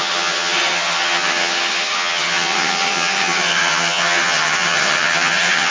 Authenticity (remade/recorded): remade